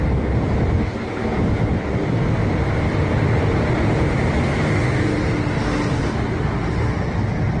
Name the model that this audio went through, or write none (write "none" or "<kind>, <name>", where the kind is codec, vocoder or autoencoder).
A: none